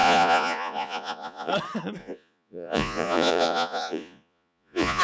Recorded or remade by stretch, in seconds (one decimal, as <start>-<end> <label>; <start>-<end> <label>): 0.0-1.5 remade; 1.5-2.0 recorded; 2.0-5.0 remade